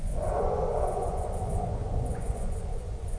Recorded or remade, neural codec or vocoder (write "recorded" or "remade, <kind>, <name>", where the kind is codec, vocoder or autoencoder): remade, vocoder, Vocos